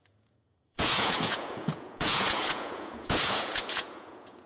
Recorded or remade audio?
remade